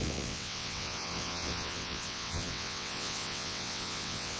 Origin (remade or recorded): remade